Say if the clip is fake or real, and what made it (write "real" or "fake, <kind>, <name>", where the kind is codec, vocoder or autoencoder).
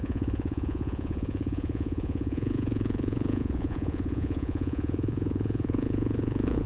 fake, vocoder, Vocos